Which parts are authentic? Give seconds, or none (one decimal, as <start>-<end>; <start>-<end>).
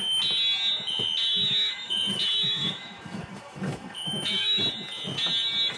0.0-1.3; 4.6-5.8